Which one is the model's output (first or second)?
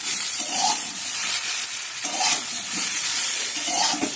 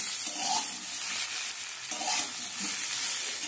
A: first